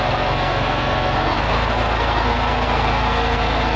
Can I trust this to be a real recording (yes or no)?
no